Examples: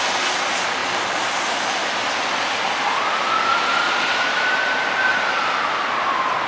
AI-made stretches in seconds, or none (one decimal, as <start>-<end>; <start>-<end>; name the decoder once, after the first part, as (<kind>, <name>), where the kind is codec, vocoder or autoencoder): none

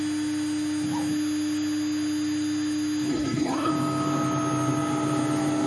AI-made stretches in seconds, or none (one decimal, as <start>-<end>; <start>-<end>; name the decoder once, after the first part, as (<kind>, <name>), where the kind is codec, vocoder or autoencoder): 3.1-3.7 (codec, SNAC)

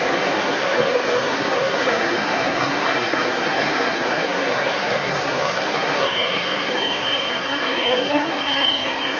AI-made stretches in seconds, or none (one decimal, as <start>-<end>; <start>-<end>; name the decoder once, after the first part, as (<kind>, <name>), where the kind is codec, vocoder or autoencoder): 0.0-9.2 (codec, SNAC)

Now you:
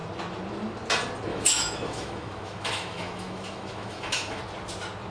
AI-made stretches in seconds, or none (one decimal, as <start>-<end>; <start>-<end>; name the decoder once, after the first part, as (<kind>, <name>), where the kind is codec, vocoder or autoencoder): 1.3-4.4 (autoencoder, DAC-VAE)

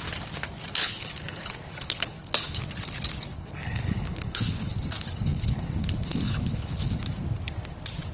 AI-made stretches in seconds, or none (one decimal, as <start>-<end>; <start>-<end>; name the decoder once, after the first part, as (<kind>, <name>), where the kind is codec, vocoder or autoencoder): 0.8-2.6 (codec, HILCodec); 3.3-4.7; 5.3-7.0

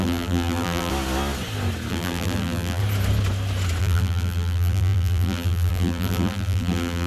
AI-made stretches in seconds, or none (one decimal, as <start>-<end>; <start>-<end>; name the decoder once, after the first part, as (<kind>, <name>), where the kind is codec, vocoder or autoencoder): 0.0-0.9 (vocoder, BigVGAN v2); 1.9-2.8; 3.8-7.1

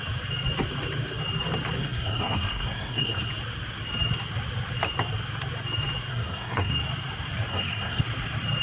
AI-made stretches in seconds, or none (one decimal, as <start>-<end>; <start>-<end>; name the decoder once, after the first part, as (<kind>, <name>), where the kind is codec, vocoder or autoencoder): 1.8-3.3 (codec, SNAC); 6.1-6.7; 7.5-8.0